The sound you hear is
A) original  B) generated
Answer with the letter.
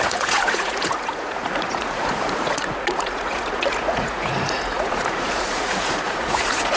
B